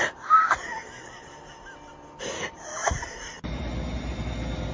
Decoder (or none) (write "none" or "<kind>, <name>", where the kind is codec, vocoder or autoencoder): none